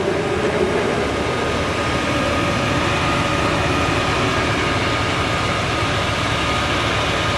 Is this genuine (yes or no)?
yes